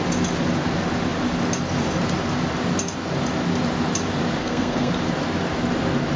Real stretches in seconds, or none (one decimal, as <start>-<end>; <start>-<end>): 0.0-4.4; 4.9-6.2